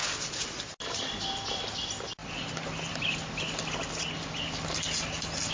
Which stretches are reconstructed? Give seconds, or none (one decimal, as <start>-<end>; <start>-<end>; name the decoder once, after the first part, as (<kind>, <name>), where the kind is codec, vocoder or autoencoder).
none